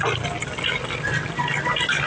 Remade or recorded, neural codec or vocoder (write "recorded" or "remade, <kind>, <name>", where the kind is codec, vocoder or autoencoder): recorded